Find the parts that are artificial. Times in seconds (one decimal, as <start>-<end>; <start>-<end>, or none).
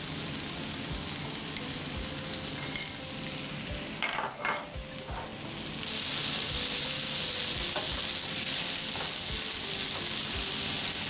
none